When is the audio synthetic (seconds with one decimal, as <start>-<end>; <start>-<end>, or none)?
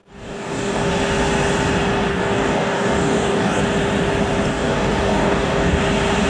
0.0-0.9; 2.1-3.6; 4.5-5.8